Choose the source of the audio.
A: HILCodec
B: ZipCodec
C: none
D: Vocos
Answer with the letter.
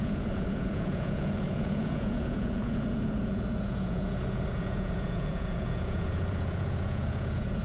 D